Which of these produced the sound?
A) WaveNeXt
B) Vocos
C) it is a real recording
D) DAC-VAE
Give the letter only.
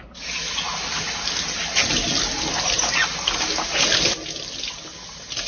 C